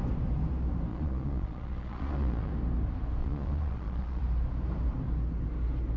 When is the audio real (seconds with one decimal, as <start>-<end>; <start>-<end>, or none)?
0.0-0.9; 2.5-3.2; 4.2-6.0